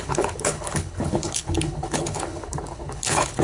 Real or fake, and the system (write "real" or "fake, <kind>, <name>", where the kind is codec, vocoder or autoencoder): fake, codec, HILCodec